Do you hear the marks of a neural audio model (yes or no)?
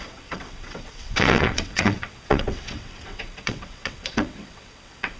yes